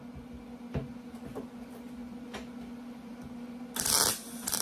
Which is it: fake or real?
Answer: real